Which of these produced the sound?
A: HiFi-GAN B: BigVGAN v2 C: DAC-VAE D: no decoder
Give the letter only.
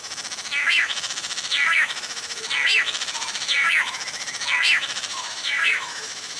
C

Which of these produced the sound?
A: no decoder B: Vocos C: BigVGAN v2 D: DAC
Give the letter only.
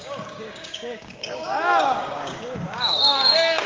D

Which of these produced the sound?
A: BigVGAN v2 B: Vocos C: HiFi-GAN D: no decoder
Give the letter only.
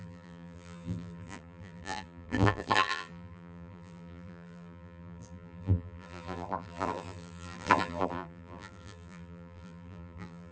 A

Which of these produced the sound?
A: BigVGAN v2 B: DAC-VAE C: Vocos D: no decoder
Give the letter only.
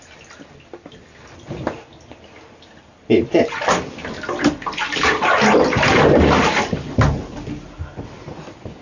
D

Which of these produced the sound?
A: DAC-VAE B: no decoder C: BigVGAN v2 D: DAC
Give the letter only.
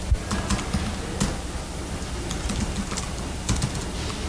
B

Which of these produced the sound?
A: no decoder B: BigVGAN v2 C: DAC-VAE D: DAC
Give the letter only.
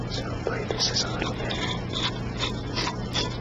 A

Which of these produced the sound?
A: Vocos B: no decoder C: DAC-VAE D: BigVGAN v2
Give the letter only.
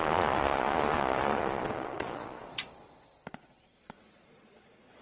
A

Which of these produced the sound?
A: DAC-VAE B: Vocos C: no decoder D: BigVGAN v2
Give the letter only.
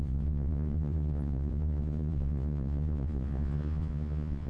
B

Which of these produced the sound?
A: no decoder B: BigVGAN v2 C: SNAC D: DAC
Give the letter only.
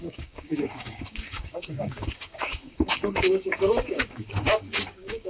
D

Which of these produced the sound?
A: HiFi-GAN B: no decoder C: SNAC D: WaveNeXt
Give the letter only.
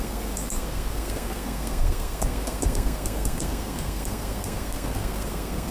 C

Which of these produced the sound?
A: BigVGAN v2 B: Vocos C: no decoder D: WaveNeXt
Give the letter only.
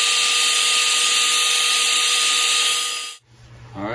C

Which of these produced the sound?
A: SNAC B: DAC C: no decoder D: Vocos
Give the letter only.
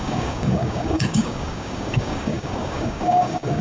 B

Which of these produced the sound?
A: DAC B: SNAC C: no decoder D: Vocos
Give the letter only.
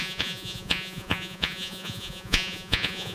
D